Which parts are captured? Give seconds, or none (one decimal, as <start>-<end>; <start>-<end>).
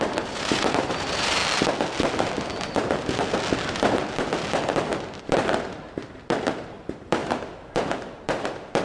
1.4-5.2; 7.2-7.9